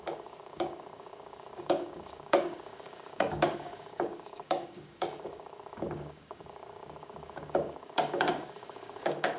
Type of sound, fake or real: fake